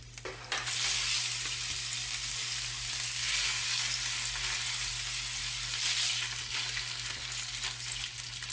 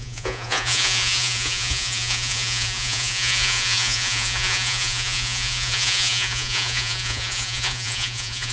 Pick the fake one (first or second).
second